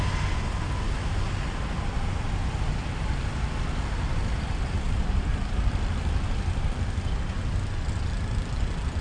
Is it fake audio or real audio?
real